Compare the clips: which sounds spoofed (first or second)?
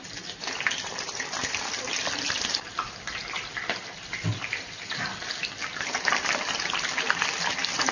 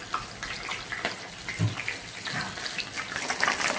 first